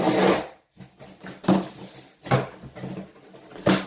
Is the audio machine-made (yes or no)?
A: no